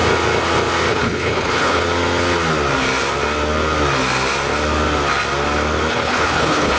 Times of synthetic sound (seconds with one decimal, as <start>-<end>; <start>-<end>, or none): 0.9-1.8; 5.9-6.8